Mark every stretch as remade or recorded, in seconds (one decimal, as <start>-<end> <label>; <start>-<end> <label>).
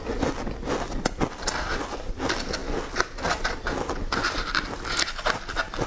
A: 0.0-5.9 recorded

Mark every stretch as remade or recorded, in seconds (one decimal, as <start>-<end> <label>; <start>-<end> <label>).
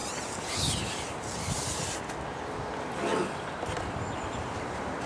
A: 0.0-5.1 recorded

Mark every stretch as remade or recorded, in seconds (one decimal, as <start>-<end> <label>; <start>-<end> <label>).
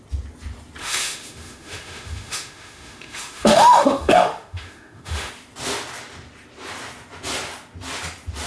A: 0.0-0.8 recorded; 0.8-5.3 remade; 5.3-8.5 recorded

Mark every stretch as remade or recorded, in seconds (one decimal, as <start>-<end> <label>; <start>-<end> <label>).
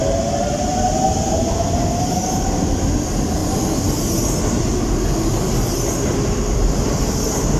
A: 0.0-7.6 recorded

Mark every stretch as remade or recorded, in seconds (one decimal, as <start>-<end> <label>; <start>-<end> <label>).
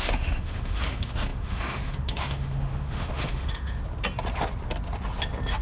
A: 0.0-3.8 remade; 3.8-5.6 recorded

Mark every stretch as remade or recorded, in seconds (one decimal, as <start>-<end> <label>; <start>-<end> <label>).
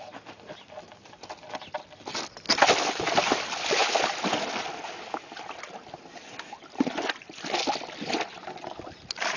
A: 0.0-9.4 recorded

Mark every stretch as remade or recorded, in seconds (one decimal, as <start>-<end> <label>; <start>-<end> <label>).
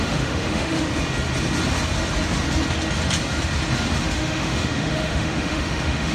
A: 0.0-0.9 remade; 0.9-4.0 recorded; 4.0-6.1 remade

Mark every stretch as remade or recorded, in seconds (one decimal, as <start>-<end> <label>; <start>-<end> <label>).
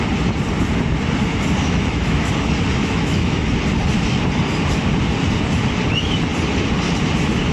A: 0.0-1.6 recorded; 1.6-2.3 remade; 2.3-2.8 recorded; 2.8-3.5 remade; 3.5-7.5 recorded